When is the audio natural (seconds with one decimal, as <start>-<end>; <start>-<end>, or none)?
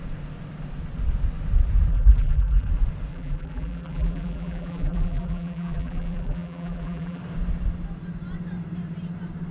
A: 0.0-1.9; 2.7-3.1; 7.2-9.5